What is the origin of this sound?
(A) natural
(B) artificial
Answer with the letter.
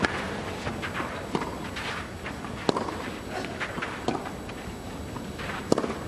A